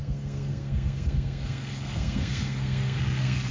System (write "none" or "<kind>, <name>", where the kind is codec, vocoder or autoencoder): codec, SNAC